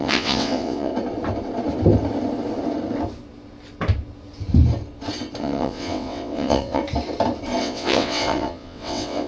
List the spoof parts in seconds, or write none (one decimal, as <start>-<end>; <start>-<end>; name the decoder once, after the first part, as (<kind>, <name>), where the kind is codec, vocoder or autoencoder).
0.0-0.9 (vocoder, WaveNeXt); 5.4-6.8; 7.6-9.3